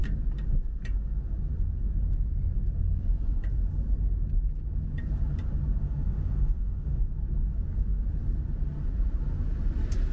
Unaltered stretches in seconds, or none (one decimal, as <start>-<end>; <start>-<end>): 0.0-5.8; 7.0-10.1